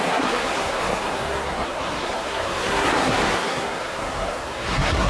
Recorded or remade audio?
remade